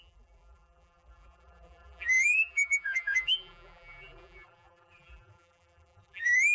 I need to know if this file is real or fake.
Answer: fake